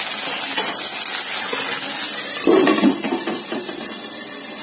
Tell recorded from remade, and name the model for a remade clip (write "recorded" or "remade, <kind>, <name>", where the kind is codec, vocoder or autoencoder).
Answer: recorded